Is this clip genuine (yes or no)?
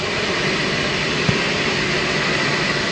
yes